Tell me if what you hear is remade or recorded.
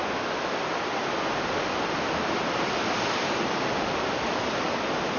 recorded